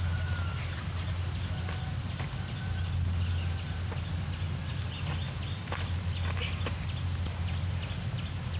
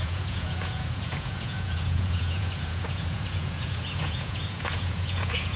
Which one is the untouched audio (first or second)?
first